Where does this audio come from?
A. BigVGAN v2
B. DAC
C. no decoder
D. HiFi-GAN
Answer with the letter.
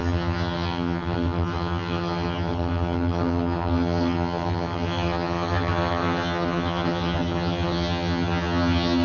D